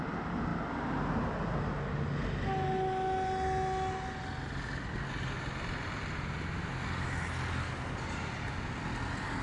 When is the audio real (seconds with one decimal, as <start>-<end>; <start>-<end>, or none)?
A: 0.0-9.4